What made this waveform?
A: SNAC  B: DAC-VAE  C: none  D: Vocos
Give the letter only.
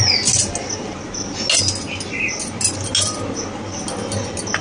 C